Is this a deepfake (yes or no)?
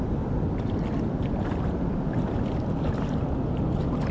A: no